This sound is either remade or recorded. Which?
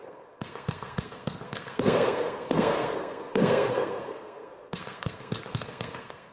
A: remade